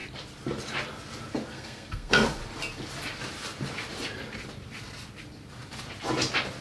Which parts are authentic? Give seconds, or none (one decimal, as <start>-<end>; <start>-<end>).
0.0-1.5; 2.4-6.6